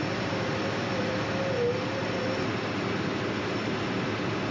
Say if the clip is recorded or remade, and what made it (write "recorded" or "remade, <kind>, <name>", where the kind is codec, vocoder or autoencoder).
recorded